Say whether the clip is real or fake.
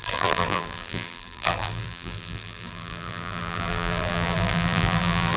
fake